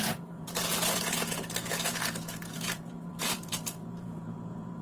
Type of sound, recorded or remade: remade